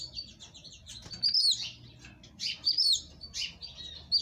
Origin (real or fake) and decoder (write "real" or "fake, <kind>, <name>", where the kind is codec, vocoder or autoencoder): real